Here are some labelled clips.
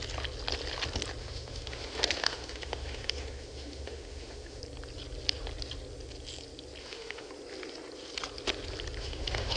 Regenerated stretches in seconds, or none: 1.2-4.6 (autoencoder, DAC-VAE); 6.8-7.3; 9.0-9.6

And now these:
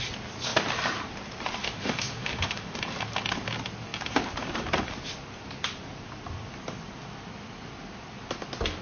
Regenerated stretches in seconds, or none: 1.6-2.8 (autoencoder, DAC-VAE)

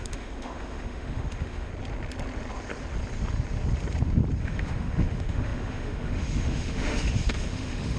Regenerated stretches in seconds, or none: 0.0-1.7 (autoencoder, DAC-VAE); 4.4-8.0

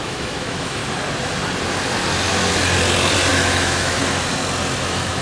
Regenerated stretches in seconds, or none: 0.0-0.8 (autoencoder, DAC-VAE); 3.3-4.0; 4.8-5.2

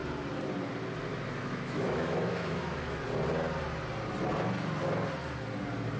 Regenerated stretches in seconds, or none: 1.1-3.0 (autoencoder, DAC-VAE)

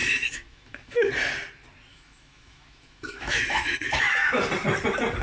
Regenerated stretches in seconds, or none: 0.0-1.1 (autoencoder, DAC-VAE); 1.9-4.4